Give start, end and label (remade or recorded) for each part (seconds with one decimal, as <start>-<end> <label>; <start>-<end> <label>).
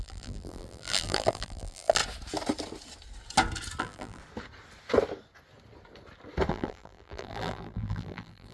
0.0-2.0 remade; 2.0-3.8 recorded; 3.8-4.2 remade; 4.2-6.5 recorded; 6.5-8.5 remade